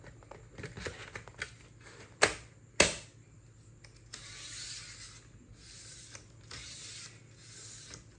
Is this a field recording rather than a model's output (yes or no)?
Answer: yes